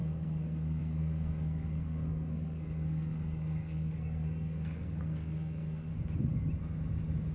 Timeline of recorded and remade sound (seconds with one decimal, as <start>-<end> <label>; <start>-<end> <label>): 0.0-5.9 remade; 5.9-7.3 recorded